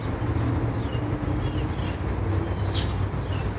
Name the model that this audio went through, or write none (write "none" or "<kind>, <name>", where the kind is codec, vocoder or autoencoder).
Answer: none